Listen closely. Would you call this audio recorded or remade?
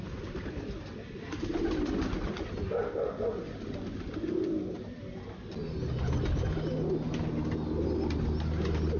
recorded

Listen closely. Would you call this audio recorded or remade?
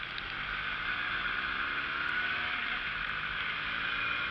recorded